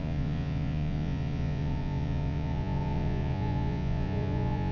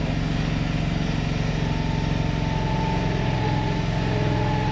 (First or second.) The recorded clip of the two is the second